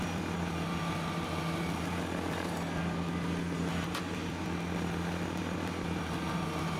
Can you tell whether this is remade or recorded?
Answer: recorded